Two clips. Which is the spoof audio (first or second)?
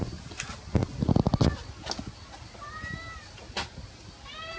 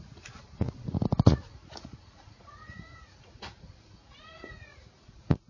second